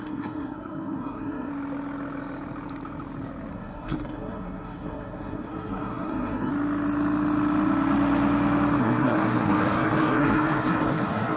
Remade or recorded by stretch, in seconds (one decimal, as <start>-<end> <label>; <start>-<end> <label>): 0.0-1.5 remade; 1.5-3.5 recorded; 3.5-6.5 remade; 6.5-8.8 recorded; 8.8-11.4 remade